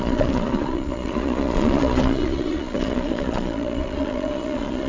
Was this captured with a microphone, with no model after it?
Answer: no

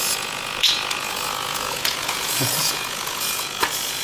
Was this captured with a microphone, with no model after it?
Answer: no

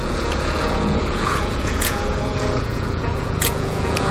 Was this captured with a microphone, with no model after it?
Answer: no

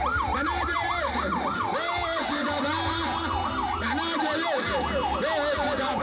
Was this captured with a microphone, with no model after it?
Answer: yes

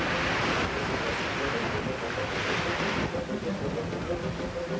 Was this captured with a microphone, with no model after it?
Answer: yes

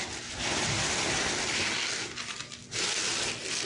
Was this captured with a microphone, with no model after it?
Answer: yes